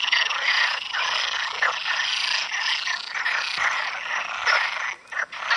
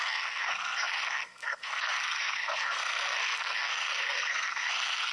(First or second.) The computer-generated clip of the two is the second